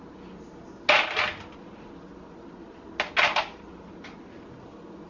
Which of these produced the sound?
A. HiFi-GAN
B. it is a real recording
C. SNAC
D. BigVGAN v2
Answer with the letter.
B